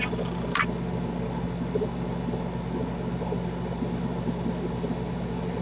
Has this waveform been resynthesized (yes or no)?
no